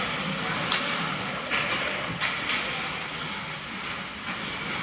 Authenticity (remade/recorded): recorded